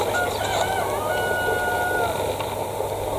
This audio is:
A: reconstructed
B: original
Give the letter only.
B